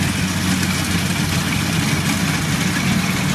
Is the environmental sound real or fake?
real